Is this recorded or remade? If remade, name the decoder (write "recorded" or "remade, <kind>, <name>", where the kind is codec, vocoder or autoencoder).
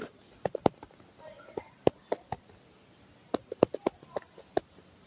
recorded